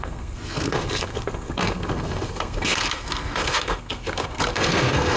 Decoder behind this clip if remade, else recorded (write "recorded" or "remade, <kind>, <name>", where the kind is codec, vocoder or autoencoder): remade, codec, SNAC